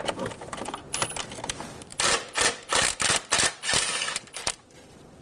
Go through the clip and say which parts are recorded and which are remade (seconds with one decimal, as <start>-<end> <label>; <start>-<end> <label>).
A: 0.0-0.8 remade; 0.8-1.4 recorded; 1.4-5.2 remade

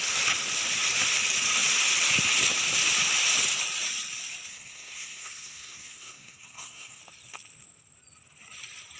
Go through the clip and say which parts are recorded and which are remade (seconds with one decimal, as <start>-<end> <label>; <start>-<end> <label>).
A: 0.0-4.5 recorded; 4.5-7.0 remade; 7.0-9.0 recorded

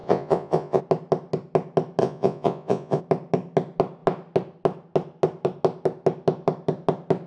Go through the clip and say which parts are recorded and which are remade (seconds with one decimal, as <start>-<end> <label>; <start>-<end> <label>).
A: 0.0-0.8 remade; 0.8-2.0 recorded; 2.0-3.0 remade; 3.0-7.3 recorded

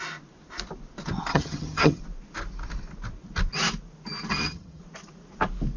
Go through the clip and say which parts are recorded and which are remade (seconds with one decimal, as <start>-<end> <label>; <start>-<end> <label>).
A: 0.0-1.3 recorded; 1.3-2.0 remade; 2.0-4.3 recorded; 4.3-4.8 remade; 4.8-5.8 recorded

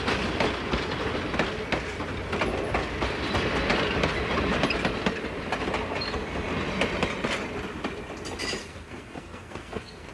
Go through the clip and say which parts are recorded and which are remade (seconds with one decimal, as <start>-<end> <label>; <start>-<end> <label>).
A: 0.0-8.6 recorded; 8.6-10.1 remade

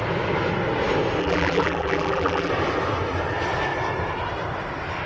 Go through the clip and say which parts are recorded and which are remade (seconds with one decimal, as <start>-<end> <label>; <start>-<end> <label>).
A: 0.0-1.2 recorded; 1.2-2.5 remade; 2.5-5.1 recorded

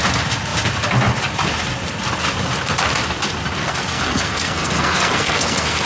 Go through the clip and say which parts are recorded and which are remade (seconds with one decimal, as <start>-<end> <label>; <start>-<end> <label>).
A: 0.0-3.6 recorded; 3.6-5.9 remade

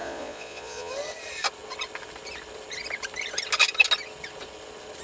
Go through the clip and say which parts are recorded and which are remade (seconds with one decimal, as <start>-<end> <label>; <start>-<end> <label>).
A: 0.0-0.9 remade; 0.9-5.0 recorded